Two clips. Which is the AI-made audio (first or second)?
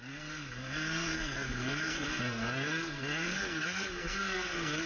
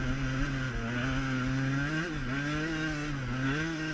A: first